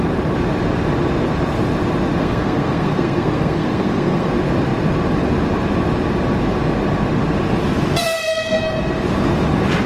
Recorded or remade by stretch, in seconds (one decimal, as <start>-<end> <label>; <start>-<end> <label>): 0.0-2.2 recorded; 2.2-4.3 remade; 4.3-8.0 recorded; 8.0-8.8 remade; 8.8-9.9 recorded